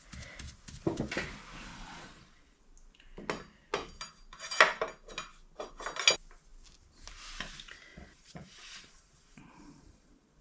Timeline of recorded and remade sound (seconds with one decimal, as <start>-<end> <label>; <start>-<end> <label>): 0.0-1.7 recorded; 1.7-2.6 remade; 2.6-7.9 recorded; 7.9-10.4 remade

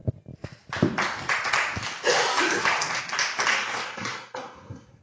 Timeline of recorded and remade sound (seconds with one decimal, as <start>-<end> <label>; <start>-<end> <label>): 0.0-3.5 recorded; 3.5-5.0 remade

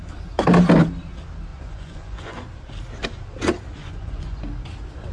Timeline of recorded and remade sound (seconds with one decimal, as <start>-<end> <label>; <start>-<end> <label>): 0.0-1.5 recorded; 1.5-2.4 remade; 2.4-3.8 recorded; 3.8-4.4 remade; 4.4-5.1 recorded

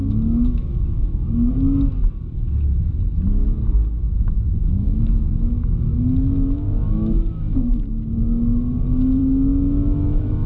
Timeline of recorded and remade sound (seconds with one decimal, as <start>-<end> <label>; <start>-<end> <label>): 0.0-1.5 remade; 1.5-4.0 recorded; 4.0-8.2 remade; 8.2-9.2 recorded; 9.2-10.5 remade

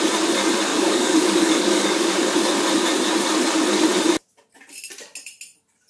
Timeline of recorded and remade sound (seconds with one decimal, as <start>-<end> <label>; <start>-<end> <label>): 0.0-0.7 recorded; 0.7-2.3 remade; 2.3-5.9 recorded

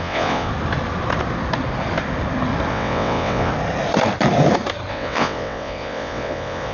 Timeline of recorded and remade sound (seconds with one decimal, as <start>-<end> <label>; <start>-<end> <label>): 0.0-0.5 remade; 0.5-2.7 recorded; 2.7-3.5 remade; 3.5-4.9 recorded; 4.9-6.7 remade

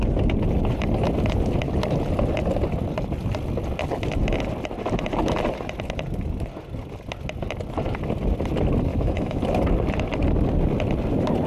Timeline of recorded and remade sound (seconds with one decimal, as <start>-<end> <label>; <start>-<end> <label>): 0.0-8.9 recorded; 8.9-9.4 remade; 9.4-11.5 recorded